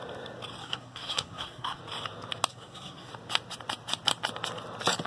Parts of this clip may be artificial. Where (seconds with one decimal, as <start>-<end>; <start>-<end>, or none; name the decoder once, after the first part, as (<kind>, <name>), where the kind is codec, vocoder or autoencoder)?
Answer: 0.6-1.8 (codec, SNAC); 2.5-3.1